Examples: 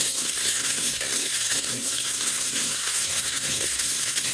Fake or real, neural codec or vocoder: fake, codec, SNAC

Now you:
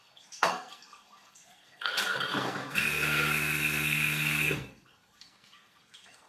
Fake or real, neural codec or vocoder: fake, codec, SNAC